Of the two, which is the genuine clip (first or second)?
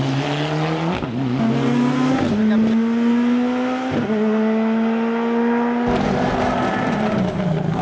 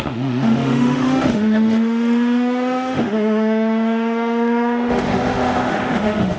first